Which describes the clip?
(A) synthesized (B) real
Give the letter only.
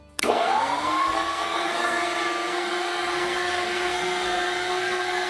A